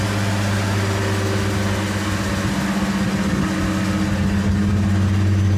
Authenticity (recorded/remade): recorded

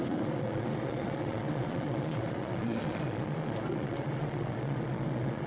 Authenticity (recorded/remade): remade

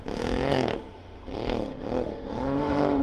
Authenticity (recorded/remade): remade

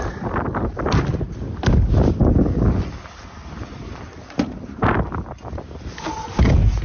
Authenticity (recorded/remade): recorded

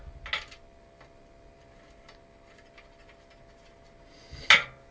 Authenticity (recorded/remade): recorded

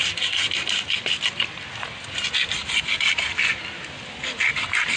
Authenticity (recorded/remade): recorded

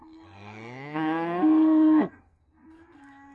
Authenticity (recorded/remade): remade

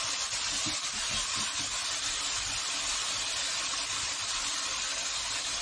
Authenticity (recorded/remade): recorded